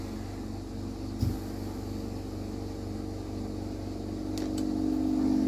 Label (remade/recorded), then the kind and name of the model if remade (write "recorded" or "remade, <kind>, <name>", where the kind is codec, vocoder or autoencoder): recorded